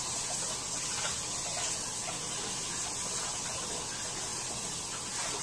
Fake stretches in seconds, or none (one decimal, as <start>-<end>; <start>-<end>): none